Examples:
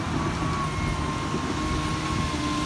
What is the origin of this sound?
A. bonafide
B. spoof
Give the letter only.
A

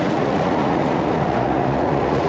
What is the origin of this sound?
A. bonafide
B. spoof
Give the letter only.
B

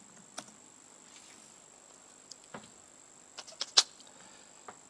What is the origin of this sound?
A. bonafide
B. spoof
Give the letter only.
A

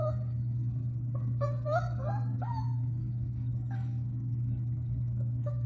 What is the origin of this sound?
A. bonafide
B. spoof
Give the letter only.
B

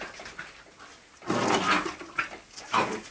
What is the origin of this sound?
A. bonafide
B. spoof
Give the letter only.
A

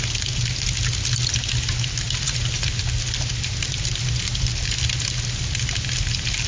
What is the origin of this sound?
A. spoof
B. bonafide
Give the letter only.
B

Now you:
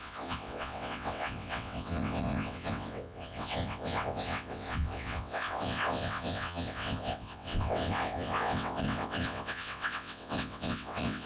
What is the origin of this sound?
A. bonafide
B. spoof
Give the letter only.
B